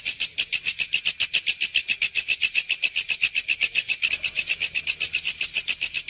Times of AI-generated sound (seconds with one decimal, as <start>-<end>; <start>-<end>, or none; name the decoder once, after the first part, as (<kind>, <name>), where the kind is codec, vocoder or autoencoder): none